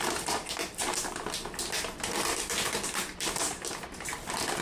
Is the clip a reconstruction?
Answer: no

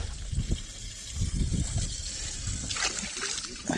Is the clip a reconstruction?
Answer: no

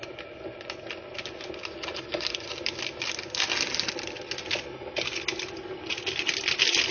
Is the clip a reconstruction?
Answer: no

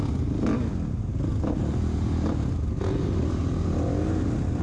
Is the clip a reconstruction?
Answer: no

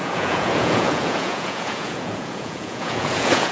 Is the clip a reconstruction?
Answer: yes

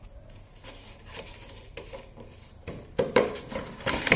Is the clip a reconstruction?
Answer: no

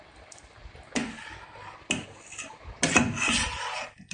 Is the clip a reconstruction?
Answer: no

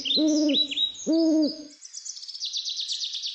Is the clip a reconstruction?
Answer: no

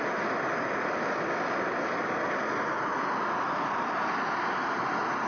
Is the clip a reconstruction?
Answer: no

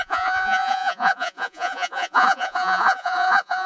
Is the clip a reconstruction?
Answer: yes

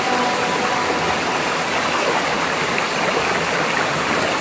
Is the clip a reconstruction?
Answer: no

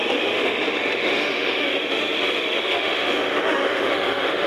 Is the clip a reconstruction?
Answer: yes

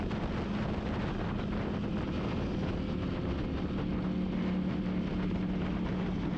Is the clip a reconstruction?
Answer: no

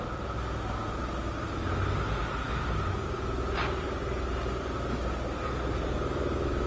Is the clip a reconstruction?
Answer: no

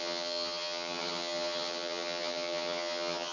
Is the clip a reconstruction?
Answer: yes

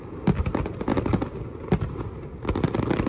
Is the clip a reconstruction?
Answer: no